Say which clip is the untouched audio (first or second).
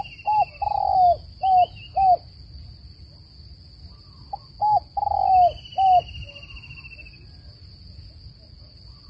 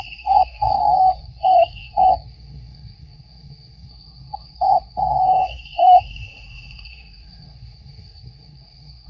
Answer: first